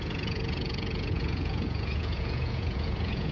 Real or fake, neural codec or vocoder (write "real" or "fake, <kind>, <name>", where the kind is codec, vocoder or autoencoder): fake, vocoder, Vocos